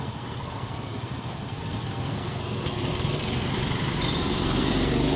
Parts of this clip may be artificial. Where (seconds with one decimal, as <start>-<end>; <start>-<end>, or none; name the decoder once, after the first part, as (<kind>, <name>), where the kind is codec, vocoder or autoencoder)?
0.0-3.5 (codec, SNAC); 4.2-5.2